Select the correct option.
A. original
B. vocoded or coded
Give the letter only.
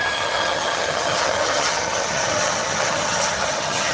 B